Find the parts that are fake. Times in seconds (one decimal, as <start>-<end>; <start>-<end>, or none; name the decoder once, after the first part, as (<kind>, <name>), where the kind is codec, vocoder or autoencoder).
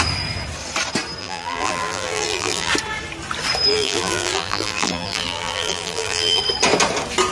1.2-2.7 (vocoder, BigVGAN v2); 3.7-6.4